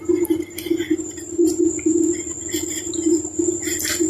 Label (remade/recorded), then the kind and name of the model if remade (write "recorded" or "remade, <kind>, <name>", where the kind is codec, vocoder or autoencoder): recorded